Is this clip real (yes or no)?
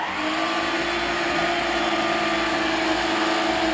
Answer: yes